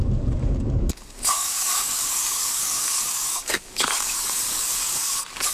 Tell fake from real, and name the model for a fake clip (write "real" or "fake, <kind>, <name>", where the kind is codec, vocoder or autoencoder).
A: fake, codec, DAC